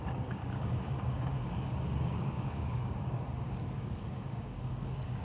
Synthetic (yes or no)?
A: yes